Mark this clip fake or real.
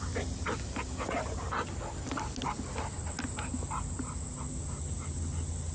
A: real